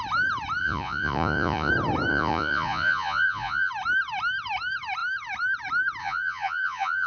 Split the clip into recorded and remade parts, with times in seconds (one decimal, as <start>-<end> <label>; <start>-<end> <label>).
0.0-0.6 recorded; 0.6-1.7 remade; 1.7-2.1 recorded; 2.1-3.7 remade; 3.7-6.0 recorded; 6.0-7.1 remade